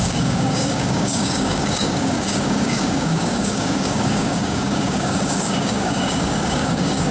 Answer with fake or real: fake